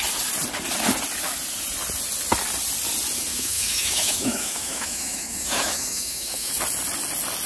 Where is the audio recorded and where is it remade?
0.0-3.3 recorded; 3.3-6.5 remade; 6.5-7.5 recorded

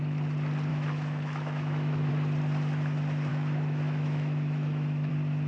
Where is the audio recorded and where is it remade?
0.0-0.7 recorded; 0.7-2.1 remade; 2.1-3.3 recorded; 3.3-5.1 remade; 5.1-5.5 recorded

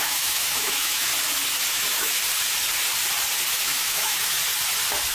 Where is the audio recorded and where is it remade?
0.0-1.1 remade; 1.1-1.7 recorded; 1.7-2.2 remade; 2.2-3.6 recorded; 3.6-4.3 remade; 4.3-5.1 recorded

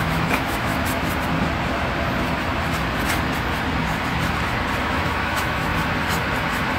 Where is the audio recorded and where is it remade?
0.0-0.7 remade; 0.7-4.8 recorded; 4.8-5.7 remade; 5.7-6.8 recorded